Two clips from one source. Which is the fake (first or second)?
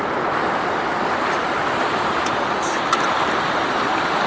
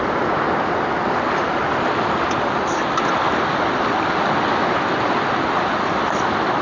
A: first